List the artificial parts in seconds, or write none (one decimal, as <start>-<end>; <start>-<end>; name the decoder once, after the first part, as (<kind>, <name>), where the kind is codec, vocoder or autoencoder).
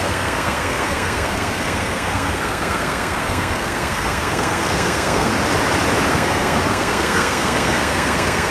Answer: 0.0-5.3 (codec, SNAC); 6.1-8.5